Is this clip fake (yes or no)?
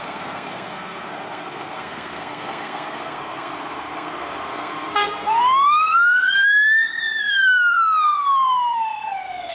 yes